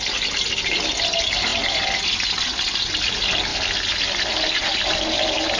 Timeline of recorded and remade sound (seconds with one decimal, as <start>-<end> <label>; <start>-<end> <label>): 0.0-5.6 recorded